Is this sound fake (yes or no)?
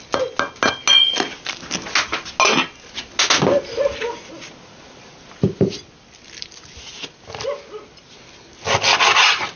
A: no